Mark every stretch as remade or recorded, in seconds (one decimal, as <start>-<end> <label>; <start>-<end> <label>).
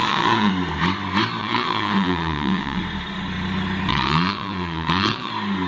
0.0-0.5 remade; 0.5-1.4 recorded; 1.4-2.8 remade; 2.8-3.9 recorded; 3.9-5.3 remade; 5.3-5.7 recorded